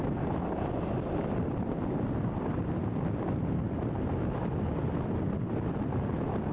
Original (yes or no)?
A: yes